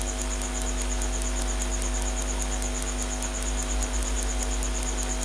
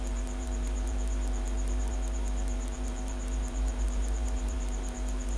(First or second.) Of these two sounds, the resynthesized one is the second